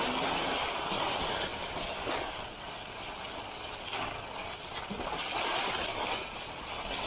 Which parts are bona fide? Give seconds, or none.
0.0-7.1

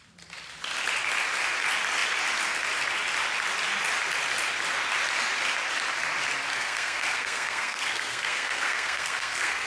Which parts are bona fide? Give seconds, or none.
0.0-6.5